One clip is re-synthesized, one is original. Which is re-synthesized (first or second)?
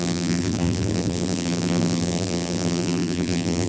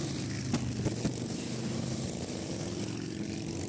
first